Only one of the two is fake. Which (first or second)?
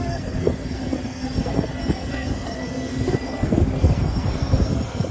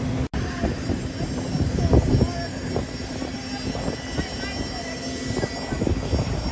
first